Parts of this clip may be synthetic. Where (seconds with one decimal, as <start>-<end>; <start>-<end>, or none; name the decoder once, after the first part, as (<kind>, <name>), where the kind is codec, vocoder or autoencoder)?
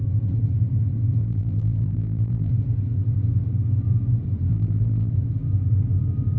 1.2-2.5 (vocoder, BigVGAN v2); 4.5-5.1